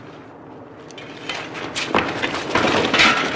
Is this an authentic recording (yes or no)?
yes